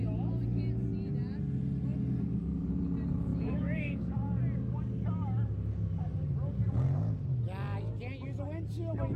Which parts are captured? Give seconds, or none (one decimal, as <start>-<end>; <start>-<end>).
0.0-3.3; 4.1-9.2